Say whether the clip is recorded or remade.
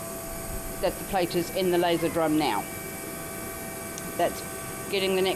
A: recorded